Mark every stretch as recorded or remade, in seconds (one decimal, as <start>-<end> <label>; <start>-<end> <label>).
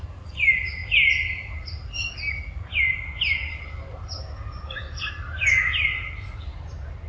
0.0-7.1 recorded